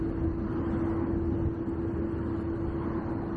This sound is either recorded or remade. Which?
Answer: recorded